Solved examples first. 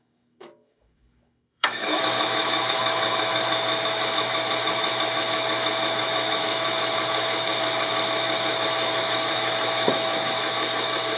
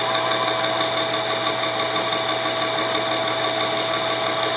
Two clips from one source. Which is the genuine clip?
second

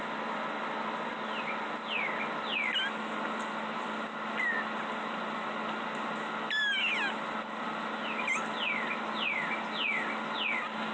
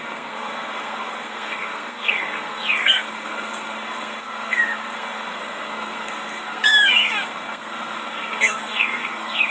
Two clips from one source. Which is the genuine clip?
first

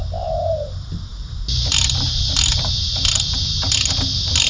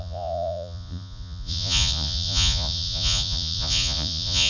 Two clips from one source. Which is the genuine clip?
first